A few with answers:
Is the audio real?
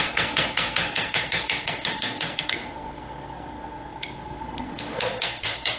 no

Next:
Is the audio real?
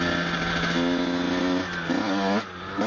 yes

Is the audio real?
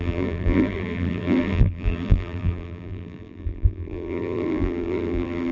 no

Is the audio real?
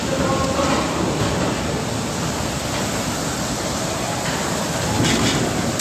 yes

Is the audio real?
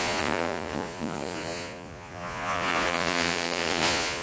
no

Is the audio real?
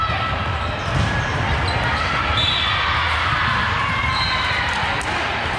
yes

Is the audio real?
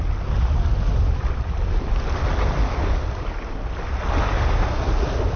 yes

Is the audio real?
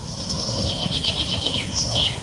no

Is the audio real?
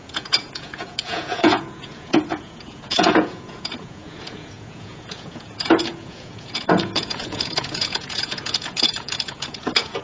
no